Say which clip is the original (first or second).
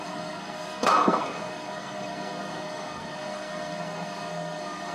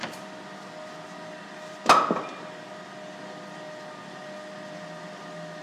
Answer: second